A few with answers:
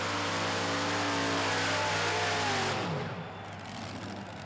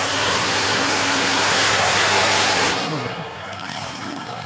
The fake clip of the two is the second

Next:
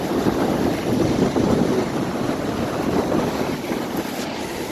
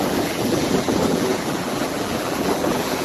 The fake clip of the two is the second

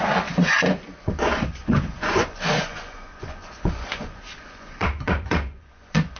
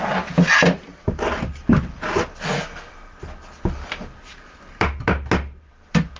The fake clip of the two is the first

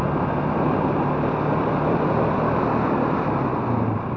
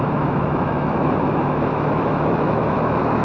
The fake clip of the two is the second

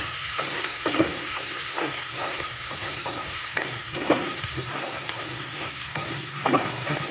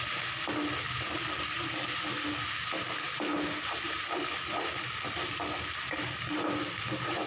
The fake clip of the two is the first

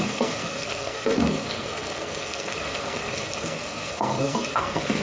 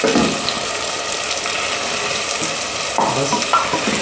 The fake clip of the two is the first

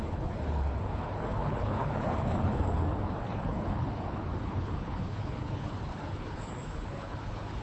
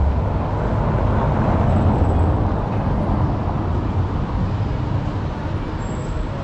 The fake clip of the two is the first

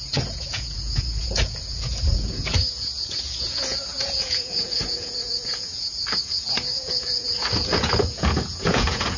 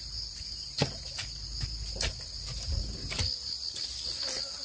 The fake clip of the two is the first